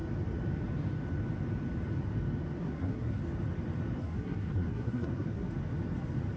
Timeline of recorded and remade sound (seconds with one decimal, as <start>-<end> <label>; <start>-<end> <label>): 0.0-2.6 recorded; 2.6-3.2 remade; 3.2-4.0 recorded; 4.0-5.5 remade; 5.5-6.4 recorded